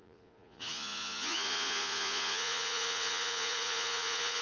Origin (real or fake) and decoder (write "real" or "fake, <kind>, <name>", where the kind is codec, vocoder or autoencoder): fake, vocoder, Vocos